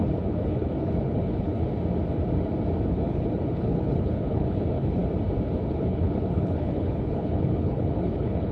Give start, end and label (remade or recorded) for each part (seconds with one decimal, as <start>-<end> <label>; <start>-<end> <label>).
0.0-1.6 remade; 1.6-2.8 recorded; 2.8-5.0 remade; 5.0-5.7 recorded; 5.7-8.5 remade